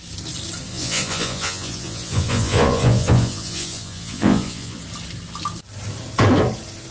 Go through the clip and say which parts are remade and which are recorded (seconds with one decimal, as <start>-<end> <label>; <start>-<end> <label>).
0.0-0.7 recorded; 0.7-4.8 remade; 4.8-6.9 recorded